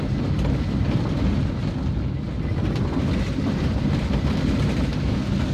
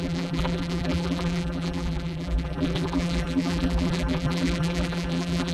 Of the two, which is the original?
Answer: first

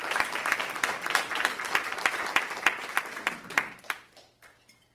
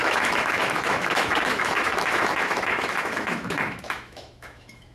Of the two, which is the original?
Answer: first